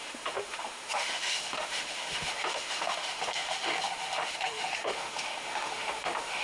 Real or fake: fake